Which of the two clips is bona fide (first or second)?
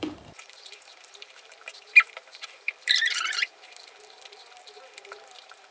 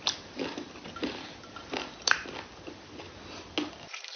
second